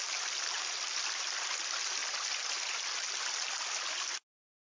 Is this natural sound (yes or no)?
yes